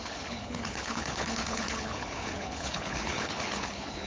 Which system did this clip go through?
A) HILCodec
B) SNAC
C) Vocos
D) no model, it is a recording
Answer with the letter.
A